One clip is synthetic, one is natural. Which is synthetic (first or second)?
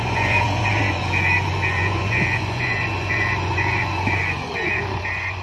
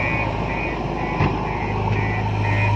first